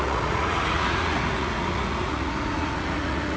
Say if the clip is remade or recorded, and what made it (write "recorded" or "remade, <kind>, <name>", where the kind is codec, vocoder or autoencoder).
remade, vocoder, Vocos